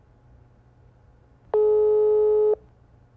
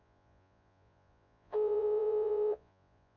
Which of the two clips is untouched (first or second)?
first